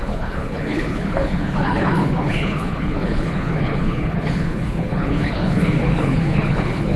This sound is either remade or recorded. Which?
remade